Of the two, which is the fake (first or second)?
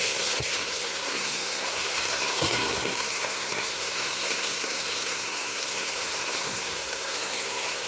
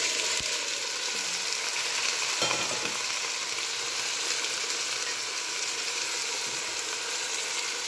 first